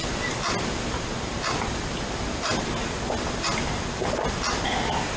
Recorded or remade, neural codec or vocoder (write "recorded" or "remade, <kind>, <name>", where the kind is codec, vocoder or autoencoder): recorded